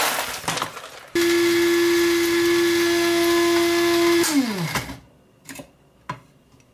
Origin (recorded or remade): recorded